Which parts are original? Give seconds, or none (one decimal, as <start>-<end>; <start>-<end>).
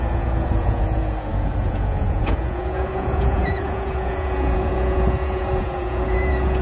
none